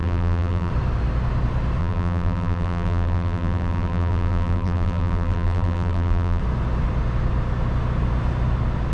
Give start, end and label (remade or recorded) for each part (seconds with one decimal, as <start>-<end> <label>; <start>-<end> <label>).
0.0-0.7 remade; 0.7-1.8 recorded; 1.8-6.4 remade; 6.4-8.9 recorded